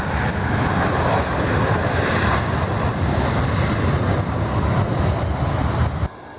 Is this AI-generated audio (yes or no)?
no